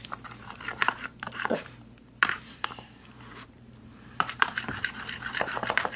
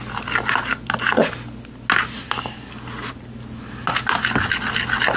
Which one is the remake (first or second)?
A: first